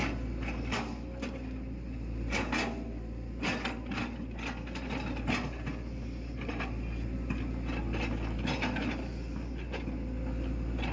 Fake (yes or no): no